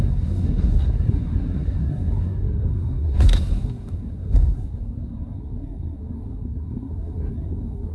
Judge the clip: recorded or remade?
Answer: remade